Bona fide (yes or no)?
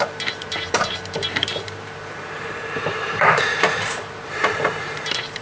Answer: no